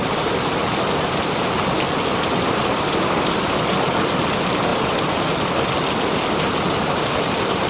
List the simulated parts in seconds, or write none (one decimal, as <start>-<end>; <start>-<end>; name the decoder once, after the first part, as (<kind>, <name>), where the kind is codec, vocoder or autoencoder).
0.0-7.7 (vocoder, BigVGAN v2)